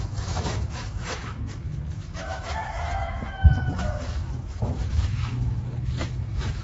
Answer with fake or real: fake